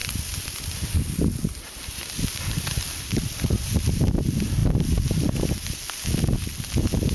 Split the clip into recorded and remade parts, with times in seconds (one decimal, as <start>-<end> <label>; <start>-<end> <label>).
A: 0.0-4.1 remade; 4.1-4.6 recorded; 4.6-5.8 remade; 5.8-7.1 recorded